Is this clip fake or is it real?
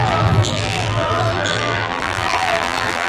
fake